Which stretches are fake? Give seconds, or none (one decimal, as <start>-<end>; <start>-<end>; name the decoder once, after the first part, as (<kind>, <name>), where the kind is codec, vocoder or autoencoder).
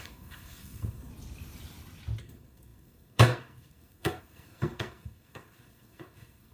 0.0-1.1 (codec, SNAC); 2.2-6.5